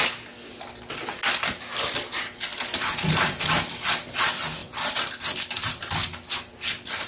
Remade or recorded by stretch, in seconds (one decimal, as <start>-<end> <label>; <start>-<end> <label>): 0.0-4.6 recorded; 4.6-5.8 remade; 5.8-7.1 recorded